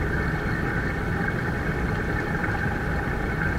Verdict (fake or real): real